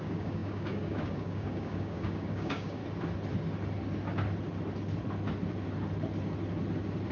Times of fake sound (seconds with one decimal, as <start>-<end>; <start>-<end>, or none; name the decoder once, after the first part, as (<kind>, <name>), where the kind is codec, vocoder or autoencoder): 0.0-2.8 (codec, DAC)